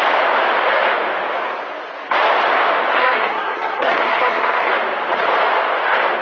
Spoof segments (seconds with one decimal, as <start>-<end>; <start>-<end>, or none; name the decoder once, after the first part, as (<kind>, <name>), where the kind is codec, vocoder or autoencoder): 2.9-4.7 (codec, SNAC)